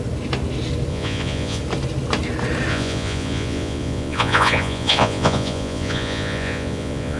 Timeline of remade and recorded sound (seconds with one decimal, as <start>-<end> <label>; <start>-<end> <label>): 0.0-0.9 recorded; 0.9-1.6 remade; 1.6-2.7 recorded; 2.7-7.2 remade